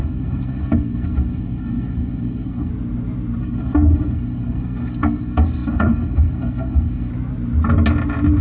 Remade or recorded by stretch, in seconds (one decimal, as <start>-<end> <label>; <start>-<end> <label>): 0.0-2.7 remade; 2.7-3.4 recorded; 3.4-7.1 remade; 7.1-8.4 recorded